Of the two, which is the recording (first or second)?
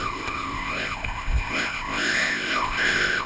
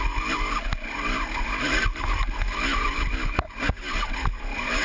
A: second